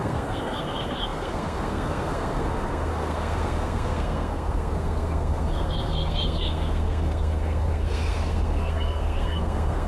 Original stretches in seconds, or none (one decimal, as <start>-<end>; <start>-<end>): none